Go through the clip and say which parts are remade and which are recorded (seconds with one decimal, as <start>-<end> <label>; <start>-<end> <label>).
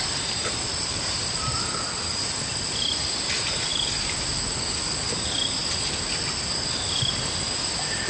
0.0-3.7 remade; 3.7-8.1 recorded